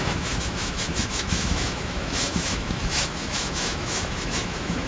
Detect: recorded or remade remade